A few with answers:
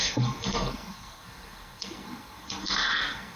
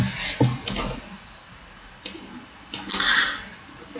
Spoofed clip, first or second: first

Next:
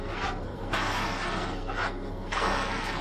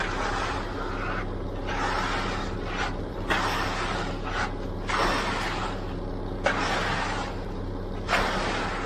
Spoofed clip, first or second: first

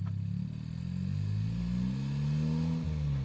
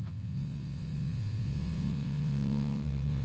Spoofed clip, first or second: second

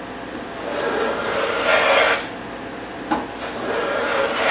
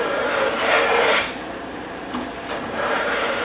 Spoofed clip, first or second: second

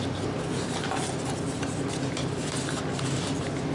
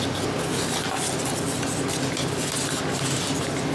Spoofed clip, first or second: first